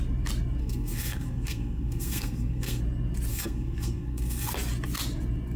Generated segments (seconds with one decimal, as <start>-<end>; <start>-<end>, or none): 0.6-2.8; 3.3-4.5